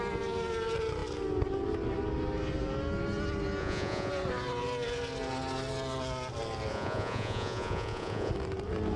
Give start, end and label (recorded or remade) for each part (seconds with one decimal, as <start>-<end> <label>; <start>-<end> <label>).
0.0-3.6 recorded; 3.6-4.1 remade; 4.1-6.7 recorded; 6.7-8.3 remade; 8.3-9.0 recorded